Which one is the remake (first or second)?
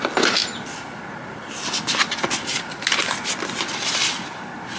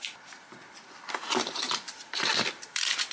second